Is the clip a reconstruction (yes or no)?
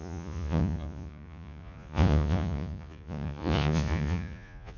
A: yes